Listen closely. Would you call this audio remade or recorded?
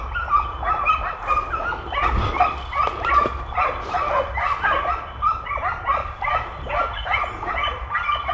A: recorded